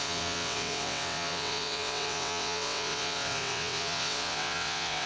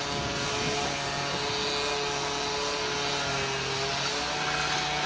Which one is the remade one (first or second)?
first